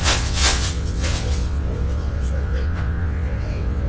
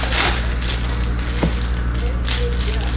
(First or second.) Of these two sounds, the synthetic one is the first